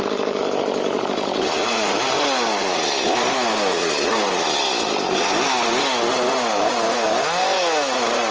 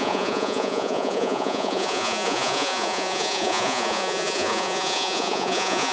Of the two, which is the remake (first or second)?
second